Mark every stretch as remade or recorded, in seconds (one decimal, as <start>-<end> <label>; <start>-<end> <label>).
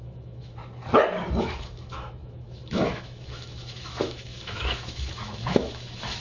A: 0.0-0.6 remade; 0.6-1.4 recorded; 1.4-6.2 remade